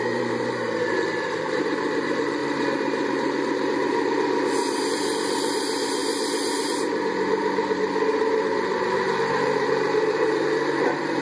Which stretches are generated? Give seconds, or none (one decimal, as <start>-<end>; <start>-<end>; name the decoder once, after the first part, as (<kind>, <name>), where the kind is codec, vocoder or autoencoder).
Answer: 0.0-6.0 (vocoder, BigVGAN v2); 6.6-11.2